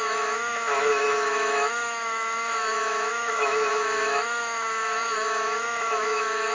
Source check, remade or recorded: remade